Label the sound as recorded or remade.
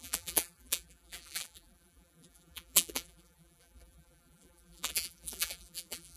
remade